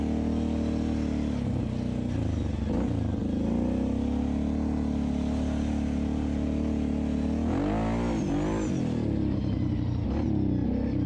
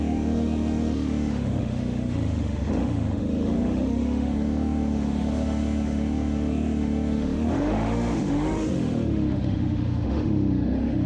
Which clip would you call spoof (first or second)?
second